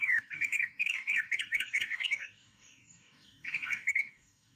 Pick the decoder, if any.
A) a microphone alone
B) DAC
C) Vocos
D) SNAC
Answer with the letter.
B